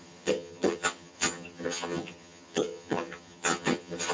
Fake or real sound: fake